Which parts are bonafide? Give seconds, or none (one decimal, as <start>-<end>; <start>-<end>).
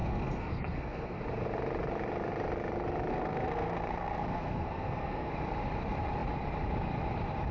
1.2-3.1; 5.3-7.5